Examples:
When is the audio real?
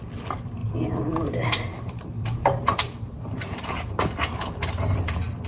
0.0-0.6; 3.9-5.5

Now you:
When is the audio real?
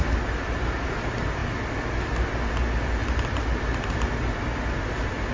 0.0-3.0; 3.8-5.3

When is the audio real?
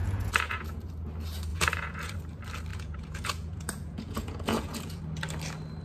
1.1-1.5; 2.1-2.7; 5.0-5.8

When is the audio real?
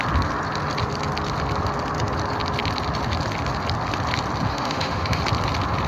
0.0-4.5; 5.2-5.9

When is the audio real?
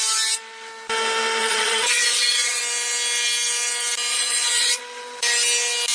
0.0-1.4; 2.6-4.1; 4.8-5.9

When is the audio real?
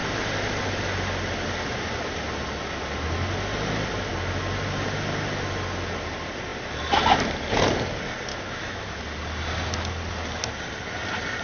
0.0-8.3; 9.0-11.4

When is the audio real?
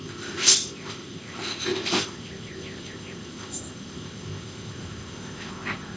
none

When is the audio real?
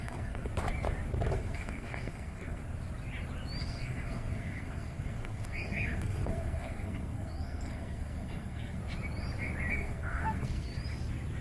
0.5-1.3; 2.6-3.6; 8.8-9.7; 10.7-11.4